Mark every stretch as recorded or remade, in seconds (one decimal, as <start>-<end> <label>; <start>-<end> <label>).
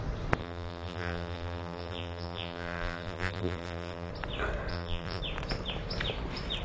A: 0.0-0.4 recorded; 0.4-4.1 remade; 4.1-4.7 recorded; 4.7-5.2 remade; 5.2-6.6 recorded